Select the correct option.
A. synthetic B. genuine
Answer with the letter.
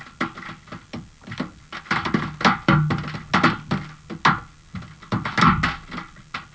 B